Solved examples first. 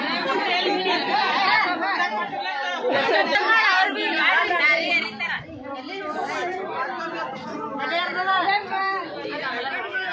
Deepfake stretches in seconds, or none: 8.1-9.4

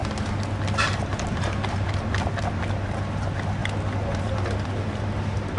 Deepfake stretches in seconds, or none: none

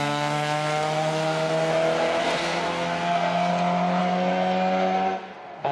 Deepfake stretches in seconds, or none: 0.0-1.7; 2.2-3.5; 4.0-5.7

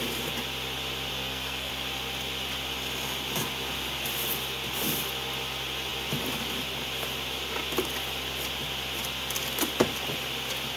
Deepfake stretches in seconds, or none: 1.1-1.7

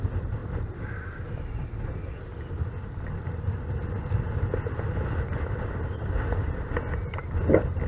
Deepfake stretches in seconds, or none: none